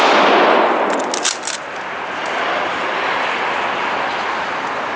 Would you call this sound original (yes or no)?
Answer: yes